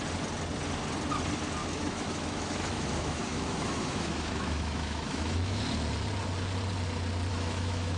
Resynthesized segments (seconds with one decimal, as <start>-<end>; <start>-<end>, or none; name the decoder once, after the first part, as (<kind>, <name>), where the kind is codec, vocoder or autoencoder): 1.6-5.6 (autoencoder, DAC-VAE); 7.3-8.0